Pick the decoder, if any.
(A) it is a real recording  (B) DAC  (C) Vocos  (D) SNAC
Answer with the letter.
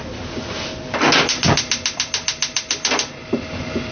A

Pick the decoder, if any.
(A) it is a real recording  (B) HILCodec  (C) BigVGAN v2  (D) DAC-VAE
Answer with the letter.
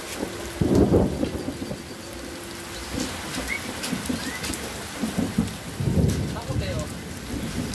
A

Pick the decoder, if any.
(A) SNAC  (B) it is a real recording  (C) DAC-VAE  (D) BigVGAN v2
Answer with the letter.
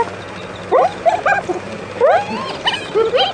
B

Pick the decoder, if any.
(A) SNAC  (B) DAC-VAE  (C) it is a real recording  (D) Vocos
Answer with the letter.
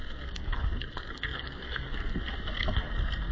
A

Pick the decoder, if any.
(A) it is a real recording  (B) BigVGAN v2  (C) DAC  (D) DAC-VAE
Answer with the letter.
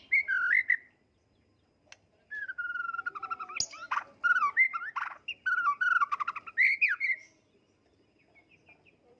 A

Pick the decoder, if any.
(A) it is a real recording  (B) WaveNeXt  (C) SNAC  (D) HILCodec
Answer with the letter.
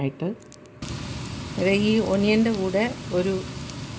A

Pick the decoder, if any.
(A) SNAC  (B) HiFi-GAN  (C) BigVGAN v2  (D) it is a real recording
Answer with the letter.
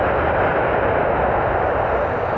D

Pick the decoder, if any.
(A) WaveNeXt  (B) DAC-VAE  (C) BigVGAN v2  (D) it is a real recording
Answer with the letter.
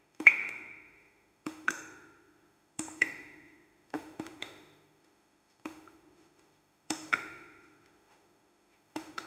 B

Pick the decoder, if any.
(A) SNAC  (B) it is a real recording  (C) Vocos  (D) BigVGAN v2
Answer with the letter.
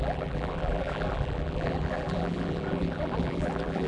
D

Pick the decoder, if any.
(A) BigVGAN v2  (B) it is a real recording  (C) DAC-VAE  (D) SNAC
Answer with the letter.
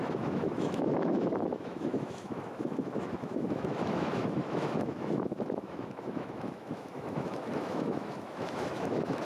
C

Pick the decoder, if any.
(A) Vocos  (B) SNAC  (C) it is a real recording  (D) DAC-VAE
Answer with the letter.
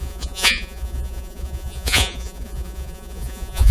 A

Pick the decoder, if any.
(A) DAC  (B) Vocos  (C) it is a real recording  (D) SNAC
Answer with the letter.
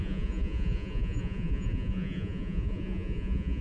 B